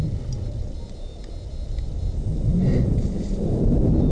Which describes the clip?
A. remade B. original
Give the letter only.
B